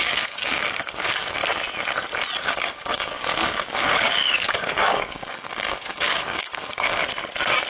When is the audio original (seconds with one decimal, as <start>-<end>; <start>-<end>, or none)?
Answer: 1.4-2.4; 7.0-7.7